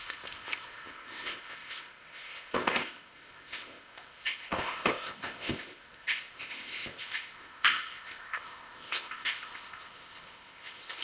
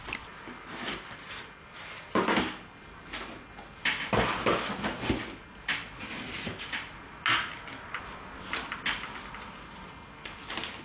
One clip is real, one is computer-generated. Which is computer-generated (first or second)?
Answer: first